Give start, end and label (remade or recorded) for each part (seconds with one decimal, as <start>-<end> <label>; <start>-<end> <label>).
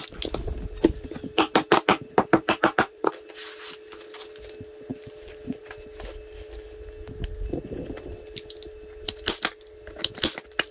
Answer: 0.0-1.9 recorded; 1.9-3.1 remade; 3.1-10.7 recorded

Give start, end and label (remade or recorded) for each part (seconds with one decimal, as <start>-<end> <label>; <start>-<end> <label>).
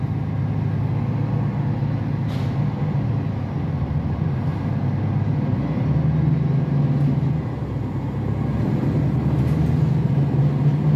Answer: 0.0-11.0 recorded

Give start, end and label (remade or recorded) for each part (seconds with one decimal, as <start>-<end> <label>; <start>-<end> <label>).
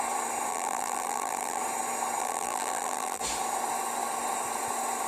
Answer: 0.0-0.5 recorded; 0.5-1.6 remade; 1.6-2.2 recorded; 2.2-3.2 remade; 3.2-5.1 recorded